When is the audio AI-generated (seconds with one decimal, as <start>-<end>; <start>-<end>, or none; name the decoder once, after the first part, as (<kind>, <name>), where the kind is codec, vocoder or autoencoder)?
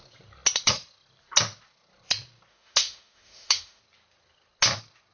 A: 2.5-3.8 (autoencoder, DAC-VAE)